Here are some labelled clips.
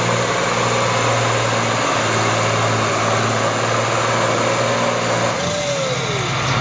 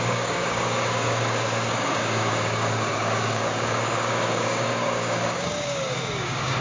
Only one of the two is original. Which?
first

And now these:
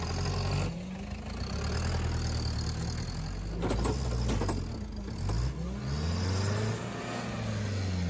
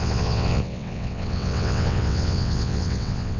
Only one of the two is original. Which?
first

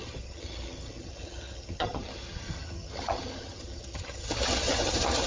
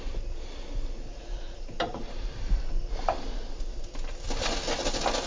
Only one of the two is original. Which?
second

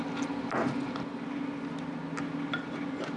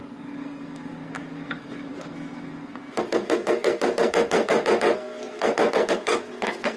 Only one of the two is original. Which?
first